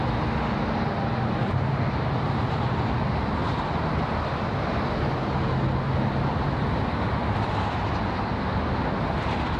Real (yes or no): yes